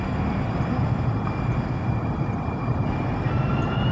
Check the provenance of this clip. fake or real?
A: real